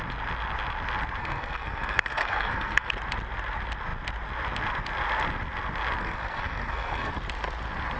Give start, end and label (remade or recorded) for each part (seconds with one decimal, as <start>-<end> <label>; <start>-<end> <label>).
0.0-1.2 recorded; 1.2-2.9 remade; 2.9-6.0 recorded; 6.0-7.1 remade; 7.1-8.0 recorded